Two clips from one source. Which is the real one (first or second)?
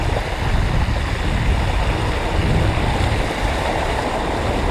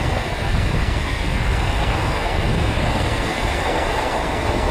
first